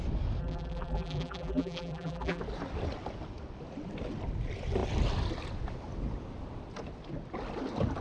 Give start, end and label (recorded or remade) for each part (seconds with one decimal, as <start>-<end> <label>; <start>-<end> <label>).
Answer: 0.0-0.4 recorded; 0.4-2.4 remade; 2.4-8.0 recorded